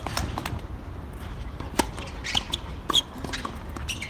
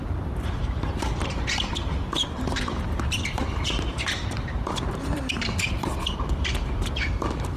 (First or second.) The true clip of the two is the first